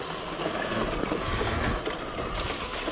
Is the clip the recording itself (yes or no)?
yes